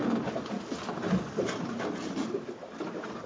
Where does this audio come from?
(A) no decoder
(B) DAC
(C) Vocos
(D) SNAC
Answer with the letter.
A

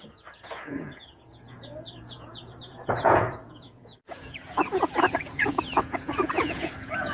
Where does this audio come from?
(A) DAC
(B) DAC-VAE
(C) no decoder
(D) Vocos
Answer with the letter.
D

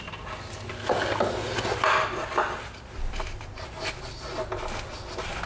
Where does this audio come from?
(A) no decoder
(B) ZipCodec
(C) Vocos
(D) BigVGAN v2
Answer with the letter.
A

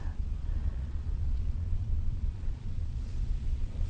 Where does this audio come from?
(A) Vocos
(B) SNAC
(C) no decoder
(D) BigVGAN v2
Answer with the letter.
A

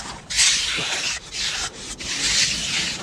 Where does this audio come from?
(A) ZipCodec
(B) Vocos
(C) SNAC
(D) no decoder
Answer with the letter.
D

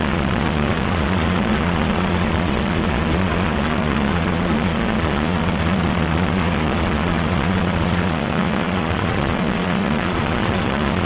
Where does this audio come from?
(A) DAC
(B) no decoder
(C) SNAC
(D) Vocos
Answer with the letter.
D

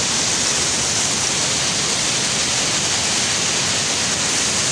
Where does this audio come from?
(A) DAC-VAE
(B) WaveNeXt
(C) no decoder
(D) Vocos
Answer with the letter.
C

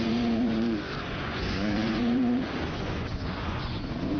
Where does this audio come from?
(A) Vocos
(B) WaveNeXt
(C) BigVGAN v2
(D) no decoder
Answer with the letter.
A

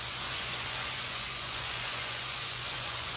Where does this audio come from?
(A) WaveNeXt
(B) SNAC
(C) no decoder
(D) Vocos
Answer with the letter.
D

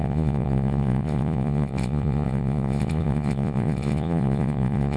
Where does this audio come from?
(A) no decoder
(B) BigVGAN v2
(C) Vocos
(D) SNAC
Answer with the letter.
C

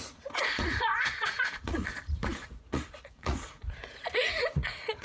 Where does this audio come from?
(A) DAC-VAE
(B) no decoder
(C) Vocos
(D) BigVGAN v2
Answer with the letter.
C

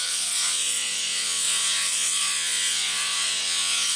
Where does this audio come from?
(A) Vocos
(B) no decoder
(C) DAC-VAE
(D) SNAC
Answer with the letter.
A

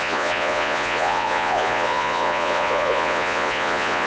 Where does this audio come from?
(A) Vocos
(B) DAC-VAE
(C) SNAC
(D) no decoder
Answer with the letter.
A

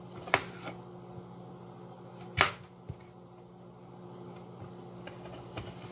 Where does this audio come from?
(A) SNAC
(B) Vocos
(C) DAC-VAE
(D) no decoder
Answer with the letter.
D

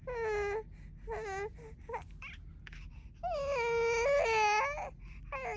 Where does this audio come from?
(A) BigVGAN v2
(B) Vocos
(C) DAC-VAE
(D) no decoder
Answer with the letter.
D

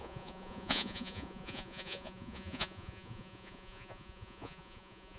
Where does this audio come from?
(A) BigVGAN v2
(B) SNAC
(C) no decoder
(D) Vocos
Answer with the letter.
D